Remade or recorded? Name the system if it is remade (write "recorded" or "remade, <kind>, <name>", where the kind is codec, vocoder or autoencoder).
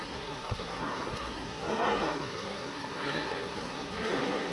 remade, codec, SNAC